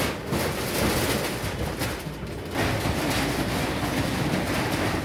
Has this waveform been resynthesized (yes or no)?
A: no